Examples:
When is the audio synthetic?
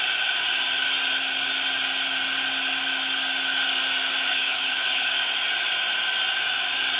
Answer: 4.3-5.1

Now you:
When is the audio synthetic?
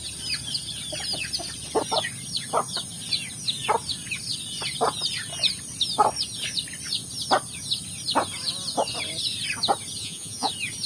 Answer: 10.0-10.5